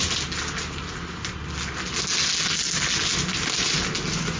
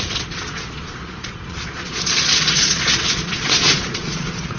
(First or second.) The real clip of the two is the first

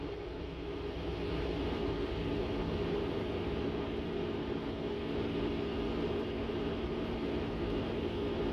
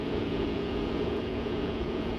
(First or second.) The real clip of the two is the first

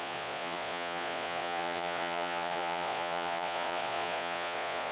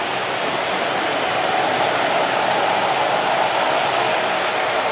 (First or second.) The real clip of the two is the second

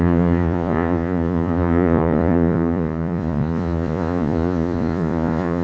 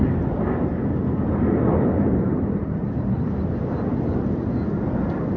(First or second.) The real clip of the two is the second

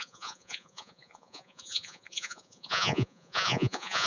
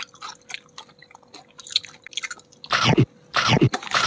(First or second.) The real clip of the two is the second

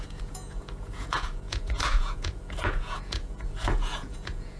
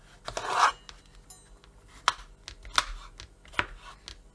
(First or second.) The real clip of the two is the second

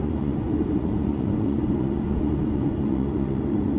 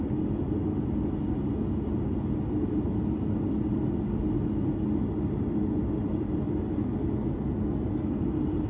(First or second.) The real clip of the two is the second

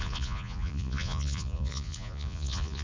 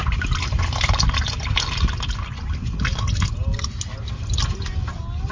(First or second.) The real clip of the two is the second